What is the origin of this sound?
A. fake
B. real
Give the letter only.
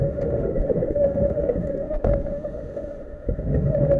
A